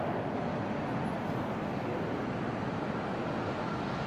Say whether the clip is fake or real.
real